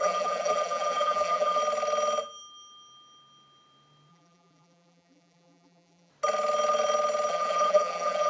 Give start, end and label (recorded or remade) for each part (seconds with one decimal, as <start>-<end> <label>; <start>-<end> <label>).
0.0-1.6 remade; 1.6-4.1 recorded; 4.1-6.1 remade; 6.1-7.3 recorded; 7.3-8.3 remade